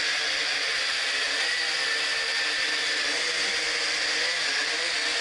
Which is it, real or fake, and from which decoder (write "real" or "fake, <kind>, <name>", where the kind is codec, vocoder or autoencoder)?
real